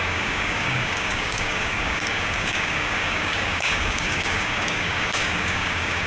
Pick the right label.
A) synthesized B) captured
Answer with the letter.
A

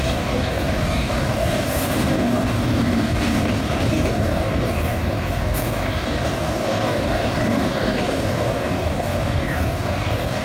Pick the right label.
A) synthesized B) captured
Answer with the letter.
A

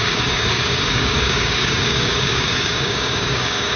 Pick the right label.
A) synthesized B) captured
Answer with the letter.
A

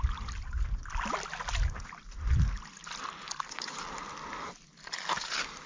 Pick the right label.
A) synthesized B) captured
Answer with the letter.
B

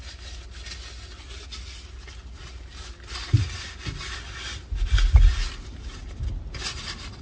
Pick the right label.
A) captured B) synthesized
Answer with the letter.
A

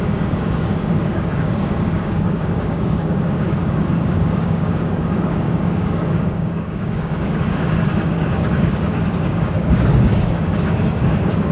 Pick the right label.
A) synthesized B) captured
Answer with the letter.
A